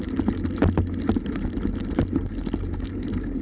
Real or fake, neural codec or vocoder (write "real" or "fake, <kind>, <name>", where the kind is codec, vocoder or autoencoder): real